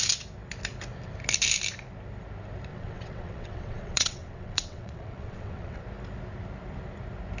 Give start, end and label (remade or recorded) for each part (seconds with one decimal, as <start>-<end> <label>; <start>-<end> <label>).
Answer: 0.0-2.7 recorded; 2.7-5.8 remade; 5.8-7.4 recorded